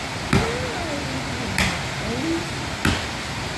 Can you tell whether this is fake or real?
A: real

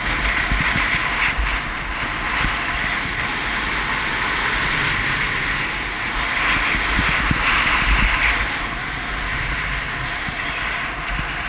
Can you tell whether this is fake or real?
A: real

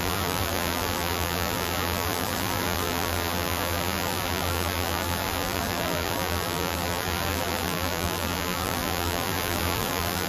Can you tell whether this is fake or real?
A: fake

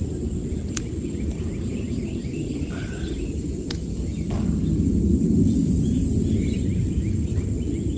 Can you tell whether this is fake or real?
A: real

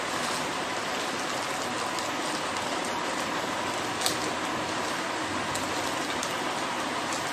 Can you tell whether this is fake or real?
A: real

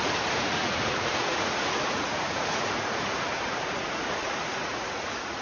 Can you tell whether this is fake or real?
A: fake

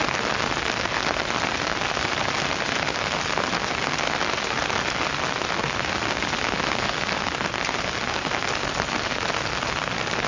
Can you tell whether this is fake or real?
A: real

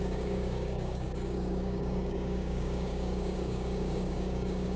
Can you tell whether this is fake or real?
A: fake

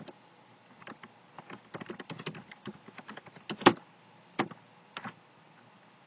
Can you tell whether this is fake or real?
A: real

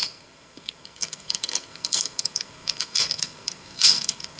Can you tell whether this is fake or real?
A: fake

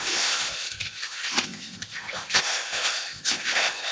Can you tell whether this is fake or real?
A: fake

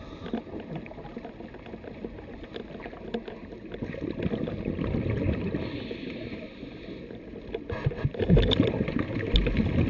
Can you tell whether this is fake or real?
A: real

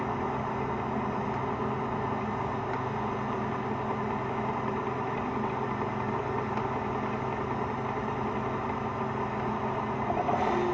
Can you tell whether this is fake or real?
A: real